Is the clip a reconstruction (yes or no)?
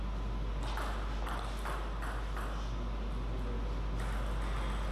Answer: no